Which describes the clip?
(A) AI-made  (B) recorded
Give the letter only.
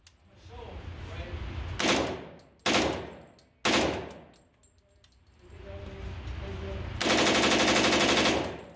B